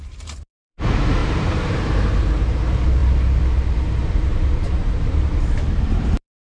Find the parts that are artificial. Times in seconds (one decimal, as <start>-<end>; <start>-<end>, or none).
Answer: 0.0-3.0; 3.6-6.4